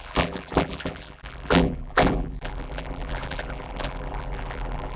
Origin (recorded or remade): remade